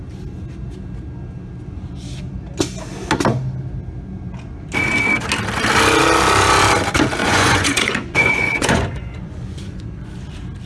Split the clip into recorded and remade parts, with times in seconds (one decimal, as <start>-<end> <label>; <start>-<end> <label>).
0.0-7.2 recorded; 7.2-10.1 remade; 10.1-10.7 recorded